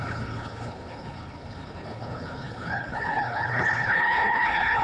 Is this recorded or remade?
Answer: remade